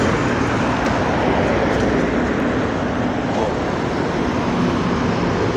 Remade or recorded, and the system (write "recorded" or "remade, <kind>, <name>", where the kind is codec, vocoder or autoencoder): recorded